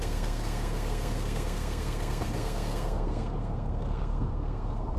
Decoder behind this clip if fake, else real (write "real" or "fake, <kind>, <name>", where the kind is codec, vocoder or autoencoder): fake, codec, SNAC